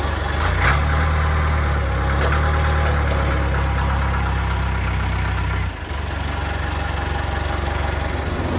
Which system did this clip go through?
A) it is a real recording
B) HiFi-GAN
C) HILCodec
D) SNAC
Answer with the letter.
A